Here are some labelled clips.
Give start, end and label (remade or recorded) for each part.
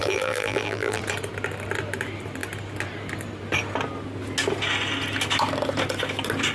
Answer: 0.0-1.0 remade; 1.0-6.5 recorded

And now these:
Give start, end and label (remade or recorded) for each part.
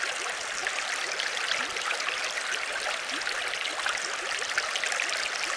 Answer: 0.0-0.6 recorded; 0.6-3.4 remade; 3.4-5.6 recorded